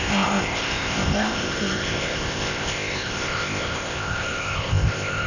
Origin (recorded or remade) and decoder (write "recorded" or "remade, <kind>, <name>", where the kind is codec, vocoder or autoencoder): remade, codec, ZipCodec